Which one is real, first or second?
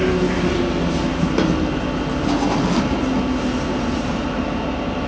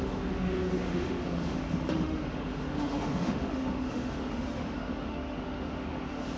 first